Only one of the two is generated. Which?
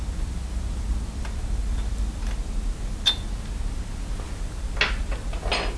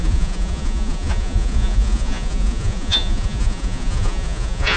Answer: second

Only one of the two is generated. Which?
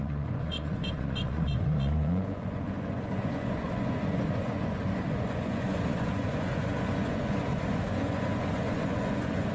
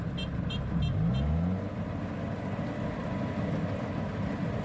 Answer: first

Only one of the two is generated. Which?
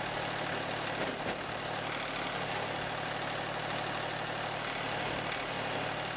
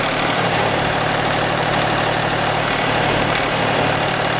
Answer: second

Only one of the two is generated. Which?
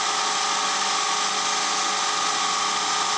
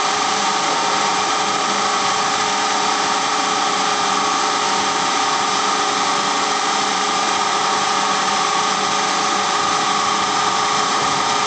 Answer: second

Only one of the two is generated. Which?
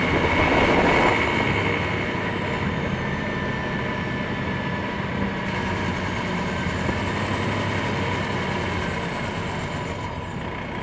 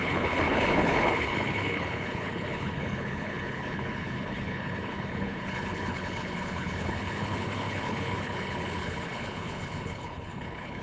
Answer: second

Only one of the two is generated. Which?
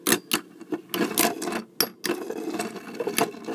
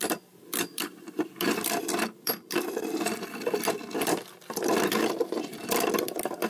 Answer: second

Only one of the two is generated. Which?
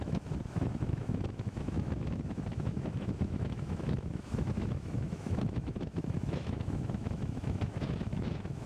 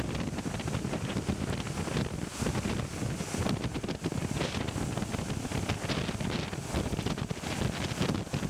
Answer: first